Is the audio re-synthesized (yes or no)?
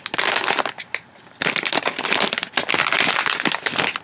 no